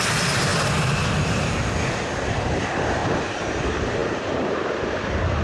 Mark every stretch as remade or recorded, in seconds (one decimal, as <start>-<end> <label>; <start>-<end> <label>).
0.0-0.5 remade; 0.5-1.2 recorded; 1.2-5.4 remade